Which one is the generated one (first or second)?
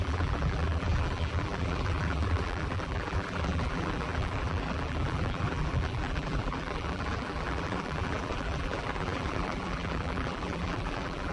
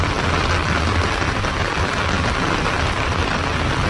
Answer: first